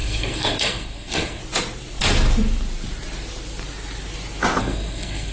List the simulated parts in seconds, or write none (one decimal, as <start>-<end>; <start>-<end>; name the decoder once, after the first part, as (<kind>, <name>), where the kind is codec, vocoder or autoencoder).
0.0-1.4 (codec, SNAC); 4.6-5.3